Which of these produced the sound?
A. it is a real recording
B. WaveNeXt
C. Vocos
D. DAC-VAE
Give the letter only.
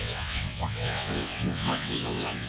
B